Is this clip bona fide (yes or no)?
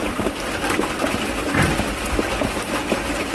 yes